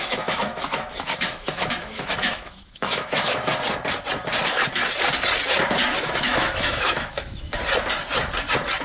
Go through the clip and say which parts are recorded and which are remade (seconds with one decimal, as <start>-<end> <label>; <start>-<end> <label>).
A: 0.0-3.5 remade; 3.5-6.0 recorded; 6.0-7.6 remade; 7.6-8.8 recorded